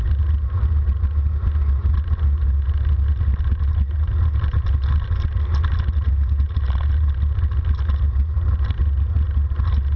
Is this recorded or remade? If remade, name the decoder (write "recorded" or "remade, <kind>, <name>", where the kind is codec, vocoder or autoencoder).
recorded